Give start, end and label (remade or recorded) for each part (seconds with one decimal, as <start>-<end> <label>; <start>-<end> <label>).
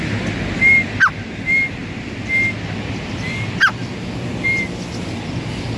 0.0-5.8 recorded